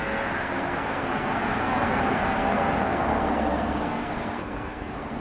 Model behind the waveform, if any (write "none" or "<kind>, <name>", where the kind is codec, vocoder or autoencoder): codec, SNAC